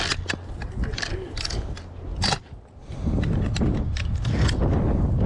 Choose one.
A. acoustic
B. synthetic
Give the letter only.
A